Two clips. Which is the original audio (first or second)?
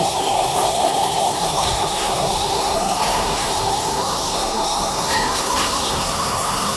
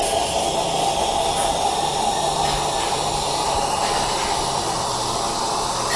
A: second